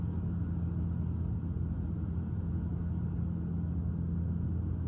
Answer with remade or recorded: recorded